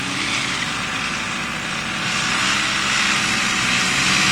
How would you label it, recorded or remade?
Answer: recorded